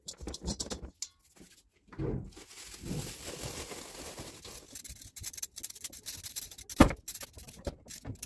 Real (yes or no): yes